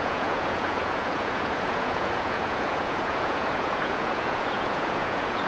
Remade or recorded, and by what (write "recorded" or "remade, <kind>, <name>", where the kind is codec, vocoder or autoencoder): remade, vocoder, Vocos